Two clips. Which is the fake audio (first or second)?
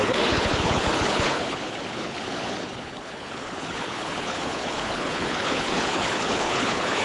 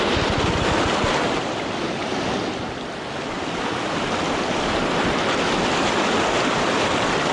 first